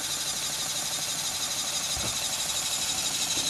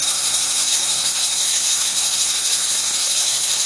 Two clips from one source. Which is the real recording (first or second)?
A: first